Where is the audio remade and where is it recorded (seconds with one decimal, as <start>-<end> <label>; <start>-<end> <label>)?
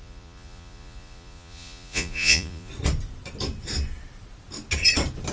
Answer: 0.0-2.7 remade; 2.7-5.3 recorded